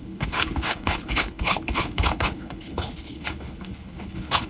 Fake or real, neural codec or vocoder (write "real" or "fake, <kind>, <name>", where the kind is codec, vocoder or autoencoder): fake, codec, HILCodec